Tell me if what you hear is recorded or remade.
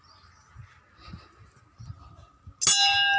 recorded